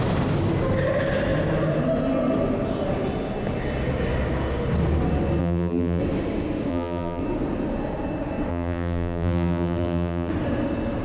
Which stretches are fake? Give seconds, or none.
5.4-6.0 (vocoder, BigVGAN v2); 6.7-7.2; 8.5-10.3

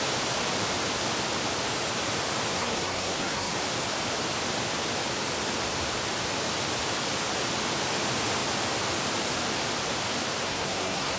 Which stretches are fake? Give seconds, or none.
2.5-3.5 (codec, SNAC); 10.4-11.2

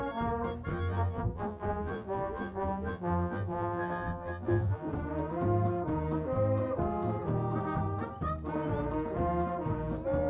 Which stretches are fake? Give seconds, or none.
0.7-4.9 (vocoder, BigVGAN v2)

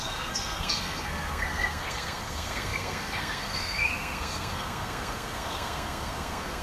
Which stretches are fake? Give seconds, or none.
0.0-6.6 (codec, SNAC)

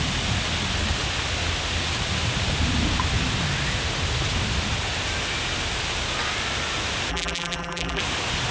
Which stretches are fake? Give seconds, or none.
7.1-8.0 (vocoder, BigVGAN v2)

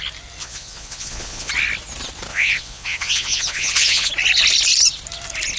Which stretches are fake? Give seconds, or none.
0.4-1.5 (vocoder, Vocos); 2.3-4.1

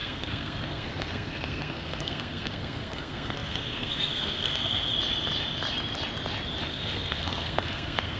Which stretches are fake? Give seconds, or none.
0.0-4.9 (codec, SNAC); 6.7-8.2

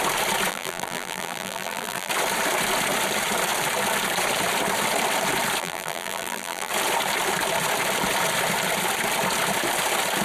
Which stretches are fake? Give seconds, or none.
0.5-2.1 (vocoder, BigVGAN v2); 5.6-6.7